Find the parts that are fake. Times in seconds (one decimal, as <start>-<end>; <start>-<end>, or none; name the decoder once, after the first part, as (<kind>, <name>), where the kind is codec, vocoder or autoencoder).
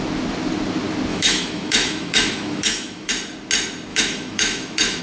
1.1-3.1 (autoencoder, DAC-VAE); 3.9-5.0